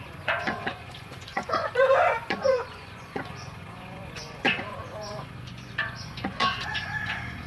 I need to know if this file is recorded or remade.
remade